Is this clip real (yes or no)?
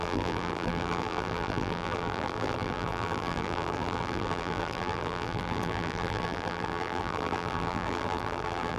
no